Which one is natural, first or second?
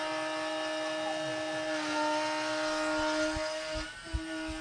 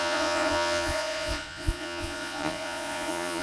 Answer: first